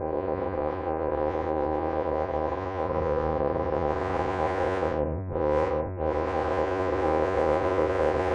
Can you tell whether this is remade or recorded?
remade